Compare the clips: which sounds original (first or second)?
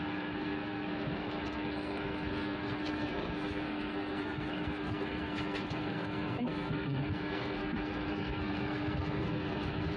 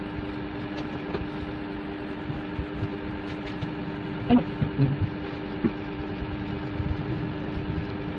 second